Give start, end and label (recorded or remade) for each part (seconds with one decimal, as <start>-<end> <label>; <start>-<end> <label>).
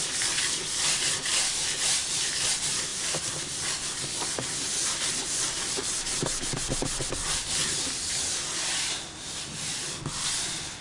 0.0-2.9 recorded; 2.9-3.4 remade; 3.4-4.8 recorded; 4.8-7.0 remade; 7.0-10.8 recorded